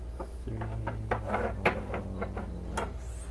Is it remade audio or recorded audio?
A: recorded